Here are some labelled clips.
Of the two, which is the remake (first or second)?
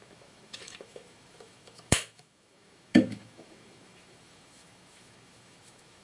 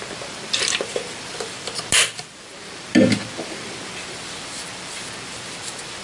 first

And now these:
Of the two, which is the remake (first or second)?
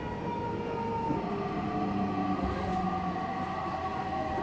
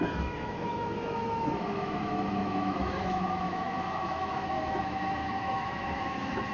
second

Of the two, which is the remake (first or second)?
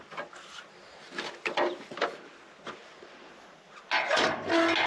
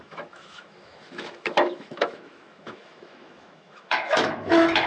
second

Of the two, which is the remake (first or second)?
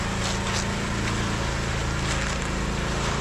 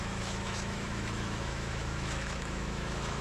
second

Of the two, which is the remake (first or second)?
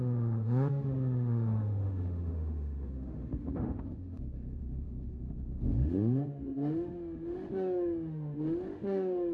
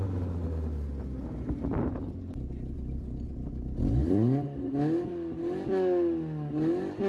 first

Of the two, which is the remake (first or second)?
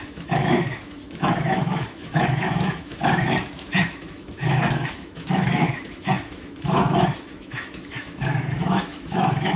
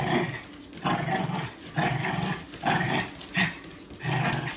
first